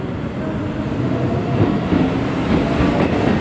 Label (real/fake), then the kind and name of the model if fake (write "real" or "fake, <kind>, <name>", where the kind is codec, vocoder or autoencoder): real